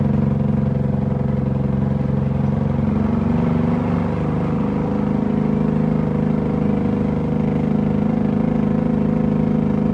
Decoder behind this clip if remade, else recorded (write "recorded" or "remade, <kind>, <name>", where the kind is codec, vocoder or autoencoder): recorded